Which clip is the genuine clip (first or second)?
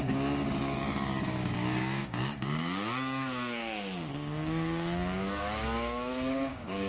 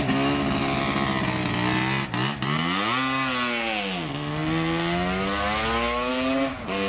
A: second